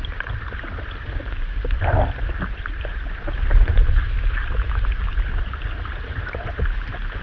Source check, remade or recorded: recorded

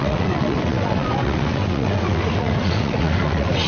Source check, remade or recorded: remade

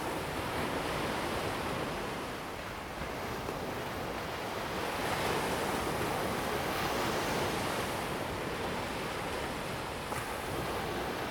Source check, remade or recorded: recorded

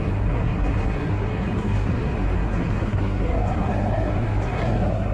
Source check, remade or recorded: remade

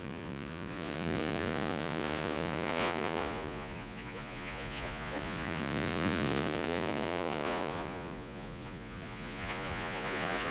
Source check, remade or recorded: remade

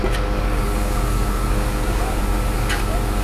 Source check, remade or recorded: remade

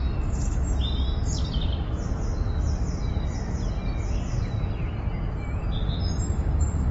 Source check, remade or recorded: recorded